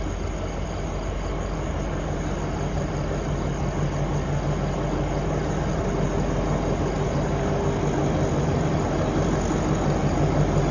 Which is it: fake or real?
real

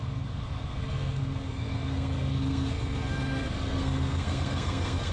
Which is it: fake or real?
fake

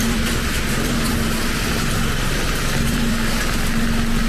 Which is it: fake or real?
fake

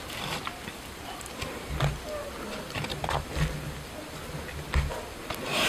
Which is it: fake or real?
real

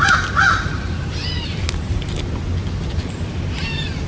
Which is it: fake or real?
real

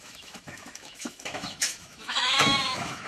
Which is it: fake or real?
fake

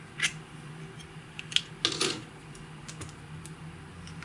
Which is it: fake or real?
real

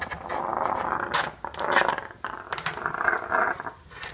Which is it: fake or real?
real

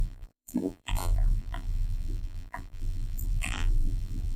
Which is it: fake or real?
fake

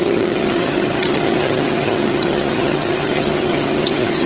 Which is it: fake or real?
fake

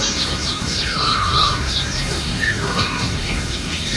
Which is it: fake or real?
fake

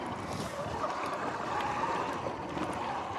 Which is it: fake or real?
real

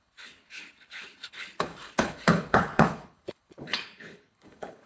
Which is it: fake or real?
fake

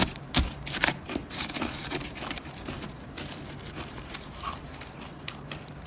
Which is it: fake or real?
fake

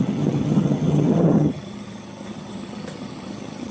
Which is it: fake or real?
fake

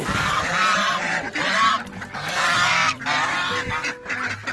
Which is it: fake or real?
fake